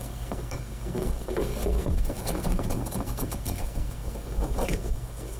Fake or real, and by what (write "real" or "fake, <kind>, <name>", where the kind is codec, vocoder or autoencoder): fake, codec, SNAC